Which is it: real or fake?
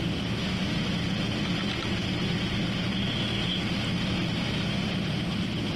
real